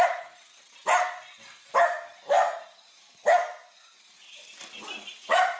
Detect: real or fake real